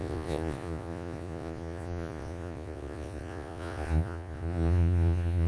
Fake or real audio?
fake